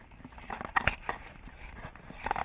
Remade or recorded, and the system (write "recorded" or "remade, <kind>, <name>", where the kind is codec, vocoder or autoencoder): recorded